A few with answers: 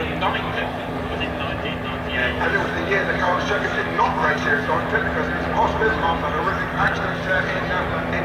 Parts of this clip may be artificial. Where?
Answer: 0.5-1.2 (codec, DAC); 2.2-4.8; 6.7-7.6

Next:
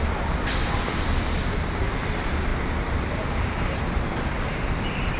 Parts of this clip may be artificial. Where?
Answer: none

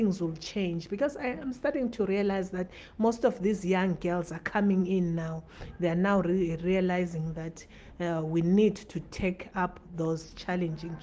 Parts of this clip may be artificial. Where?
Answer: 1.2-2.0 (autoencoder, DAC-VAE); 4.8-5.5; 7.2-8.2

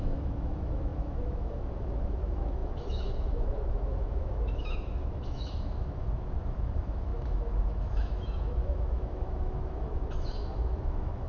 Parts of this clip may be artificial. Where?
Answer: 0.0-11.3 (autoencoder, DAC-VAE)

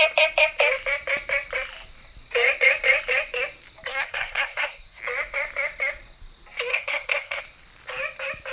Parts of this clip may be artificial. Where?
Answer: 3.9-5.0 (codec, SNAC); 6.7-7.4